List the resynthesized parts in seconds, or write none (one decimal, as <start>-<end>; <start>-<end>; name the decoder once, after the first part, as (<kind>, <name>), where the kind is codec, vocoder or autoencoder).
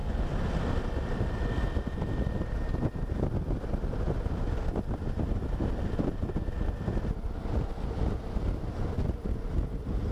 none